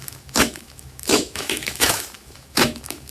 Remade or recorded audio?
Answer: remade